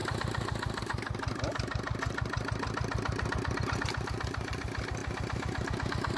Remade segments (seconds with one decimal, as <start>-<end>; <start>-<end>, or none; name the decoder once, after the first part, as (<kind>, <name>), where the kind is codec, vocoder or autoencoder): 0.8-5.0 (vocoder, BigVGAN v2)